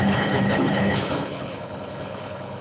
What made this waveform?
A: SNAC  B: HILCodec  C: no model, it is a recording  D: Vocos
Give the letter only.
B